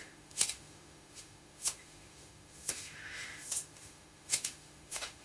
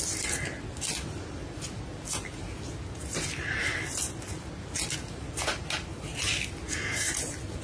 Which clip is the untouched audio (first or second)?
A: second